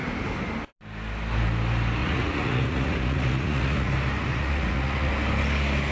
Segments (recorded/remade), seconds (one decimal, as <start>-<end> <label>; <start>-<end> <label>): 0.0-2.0 recorded; 2.0-3.9 remade; 3.9-4.3 recorded; 4.3-5.1 remade; 5.1-5.9 recorded